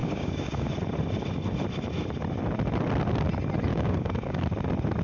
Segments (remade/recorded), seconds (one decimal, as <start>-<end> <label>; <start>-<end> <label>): 0.0-0.7 remade; 0.7-3.7 recorded; 3.7-4.4 remade; 4.4-5.0 recorded

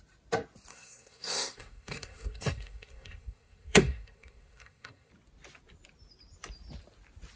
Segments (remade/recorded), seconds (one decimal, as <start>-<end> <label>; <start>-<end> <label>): 0.0-0.7 recorded; 0.7-5.1 remade; 5.1-7.4 recorded

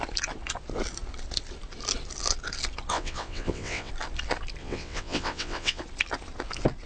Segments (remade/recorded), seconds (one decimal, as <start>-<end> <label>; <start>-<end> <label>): 0.0-2.9 recorded; 2.9-3.9 remade; 3.9-4.6 recorded; 4.6-5.8 remade; 5.8-6.9 recorded

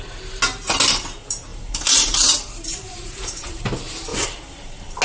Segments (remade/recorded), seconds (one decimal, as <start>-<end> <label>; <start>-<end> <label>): 0.0-1.5 recorded; 1.5-3.6 remade; 3.6-4.1 recorded; 4.1-5.0 remade

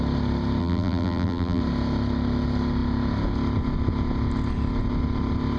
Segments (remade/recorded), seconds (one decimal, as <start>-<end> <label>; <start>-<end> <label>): 0.0-0.6 recorded; 0.6-1.6 remade; 1.6-5.6 recorded

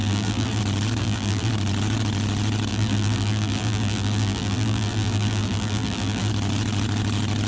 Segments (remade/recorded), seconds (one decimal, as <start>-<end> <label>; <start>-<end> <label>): 0.0-0.6 remade; 0.6-1.0 recorded; 1.0-1.5 remade; 1.5-2.7 recorded; 2.7-6.3 remade; 6.3-7.5 recorded

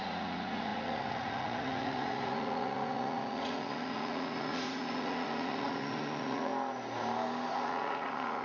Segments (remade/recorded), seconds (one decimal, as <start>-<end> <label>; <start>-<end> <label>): 0.0-6.5 remade; 6.5-7.5 recorded; 7.5-8.4 remade

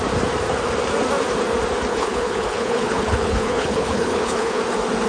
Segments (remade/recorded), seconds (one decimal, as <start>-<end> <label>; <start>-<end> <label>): 0.0-1.9 recorded; 1.9-4.6 remade; 4.6-5.1 recorded